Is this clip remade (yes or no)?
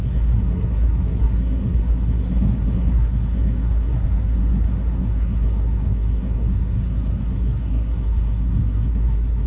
yes